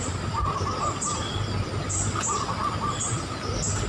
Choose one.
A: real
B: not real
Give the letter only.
A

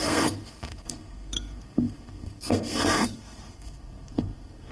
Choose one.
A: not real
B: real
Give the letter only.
A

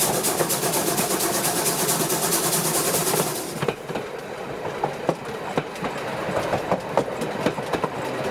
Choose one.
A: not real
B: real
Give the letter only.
B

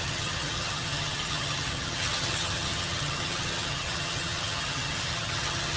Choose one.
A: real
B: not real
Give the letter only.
B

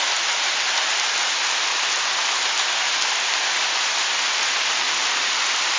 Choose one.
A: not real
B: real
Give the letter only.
B